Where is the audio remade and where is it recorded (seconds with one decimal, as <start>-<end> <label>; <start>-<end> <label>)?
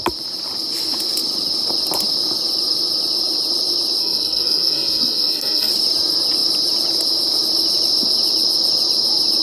0.0-4.0 recorded; 4.0-5.7 remade; 5.7-9.4 recorded